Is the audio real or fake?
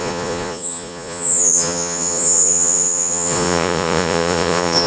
fake